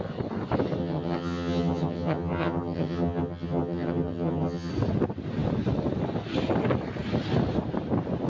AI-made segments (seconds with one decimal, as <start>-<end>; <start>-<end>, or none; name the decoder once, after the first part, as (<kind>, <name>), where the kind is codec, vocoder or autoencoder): 0.8-4.7 (vocoder, HiFi-GAN)

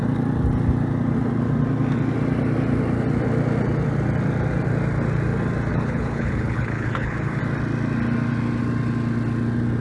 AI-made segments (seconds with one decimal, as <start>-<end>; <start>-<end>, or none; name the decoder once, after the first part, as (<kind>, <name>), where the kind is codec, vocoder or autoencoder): 5.7-7.4 (codec, HILCodec)

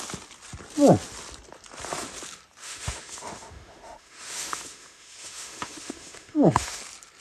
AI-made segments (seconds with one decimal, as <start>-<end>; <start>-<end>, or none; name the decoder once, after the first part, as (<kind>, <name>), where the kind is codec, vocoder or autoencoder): 2.6-6.8 (autoencoder, DAC-VAE)

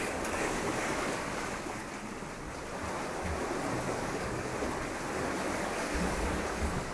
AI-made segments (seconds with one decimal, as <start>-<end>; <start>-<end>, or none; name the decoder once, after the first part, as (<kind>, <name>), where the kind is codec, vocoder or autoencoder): 0.0-1.8 (codec, DAC); 3.8-4.5; 5.4-6.9